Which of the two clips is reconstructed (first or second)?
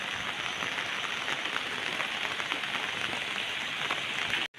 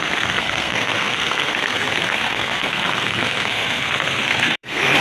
second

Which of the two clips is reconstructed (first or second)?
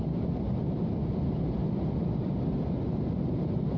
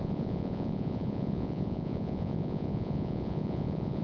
second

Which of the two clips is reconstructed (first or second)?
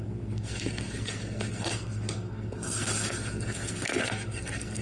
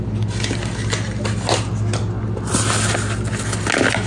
first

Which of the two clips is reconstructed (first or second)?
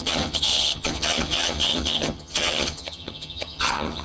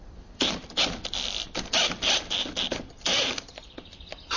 first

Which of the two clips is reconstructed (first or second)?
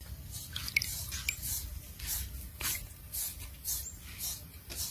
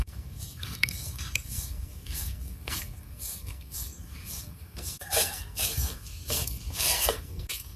second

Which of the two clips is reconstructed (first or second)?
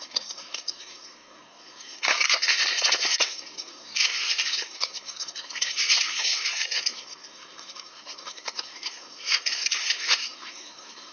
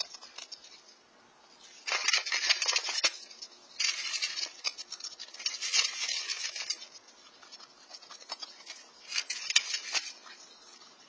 first